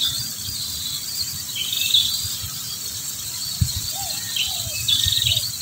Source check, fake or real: fake